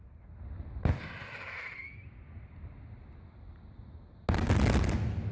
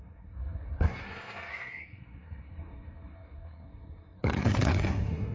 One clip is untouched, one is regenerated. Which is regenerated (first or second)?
second